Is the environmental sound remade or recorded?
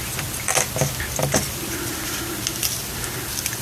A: recorded